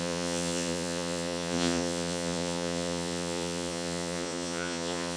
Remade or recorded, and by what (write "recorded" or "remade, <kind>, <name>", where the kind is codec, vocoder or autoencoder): remade, vocoder, Vocos